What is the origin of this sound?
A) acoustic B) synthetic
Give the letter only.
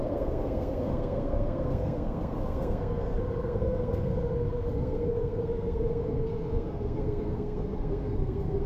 B